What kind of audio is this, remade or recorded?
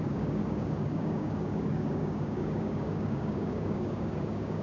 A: remade